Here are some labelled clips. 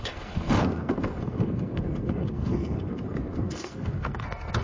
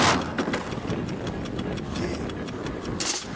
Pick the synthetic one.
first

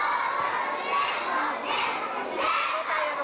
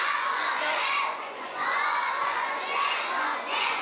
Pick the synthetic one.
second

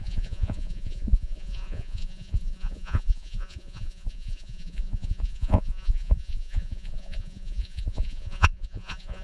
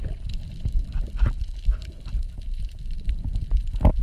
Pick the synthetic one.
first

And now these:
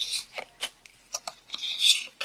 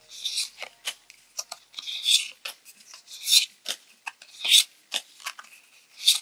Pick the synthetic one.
first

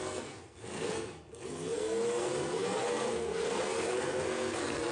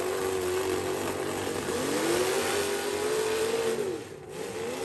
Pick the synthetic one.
first